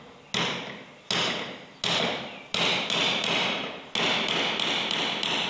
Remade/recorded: recorded